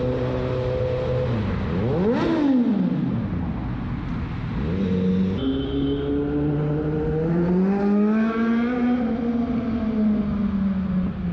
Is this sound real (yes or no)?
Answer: yes